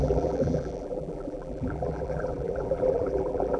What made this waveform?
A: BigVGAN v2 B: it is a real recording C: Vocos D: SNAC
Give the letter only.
A